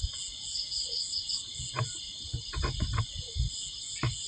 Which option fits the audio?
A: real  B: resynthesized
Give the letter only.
A